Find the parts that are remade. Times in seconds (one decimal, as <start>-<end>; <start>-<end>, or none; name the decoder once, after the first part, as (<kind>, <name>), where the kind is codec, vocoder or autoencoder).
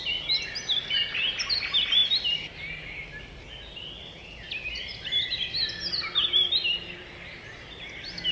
none